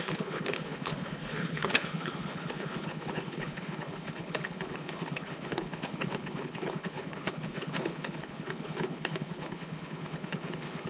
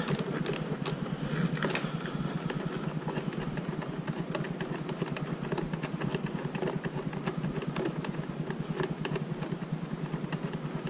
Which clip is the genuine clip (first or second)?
second